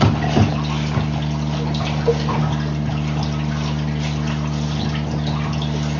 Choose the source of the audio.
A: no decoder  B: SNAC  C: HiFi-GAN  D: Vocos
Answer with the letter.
A